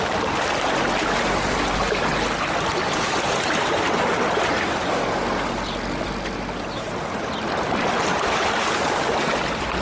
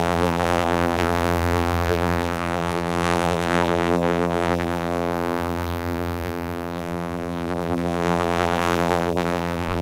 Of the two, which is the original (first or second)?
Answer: first